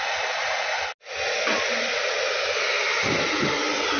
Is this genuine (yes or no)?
yes